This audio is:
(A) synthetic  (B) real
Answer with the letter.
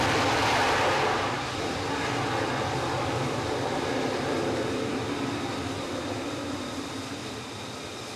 B